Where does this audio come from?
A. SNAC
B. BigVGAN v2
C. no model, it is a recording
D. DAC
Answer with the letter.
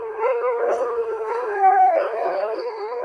A